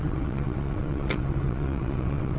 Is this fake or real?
fake